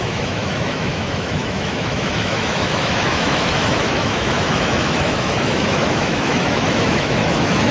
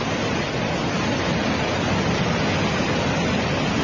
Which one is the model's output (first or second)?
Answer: first